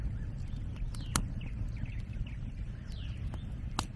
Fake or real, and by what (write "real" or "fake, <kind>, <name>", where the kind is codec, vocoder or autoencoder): real